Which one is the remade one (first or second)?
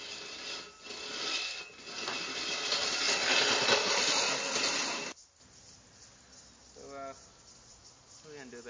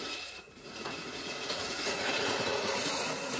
second